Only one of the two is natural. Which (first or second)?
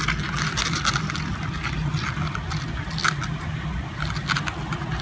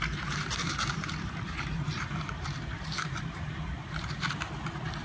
first